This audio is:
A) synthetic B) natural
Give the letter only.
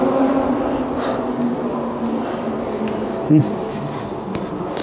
B